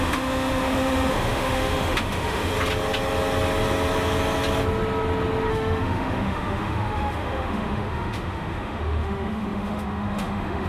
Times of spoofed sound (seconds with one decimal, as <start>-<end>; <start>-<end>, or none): 0.0-2.5; 5.5-10.7